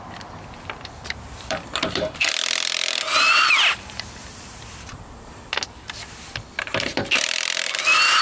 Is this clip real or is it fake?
fake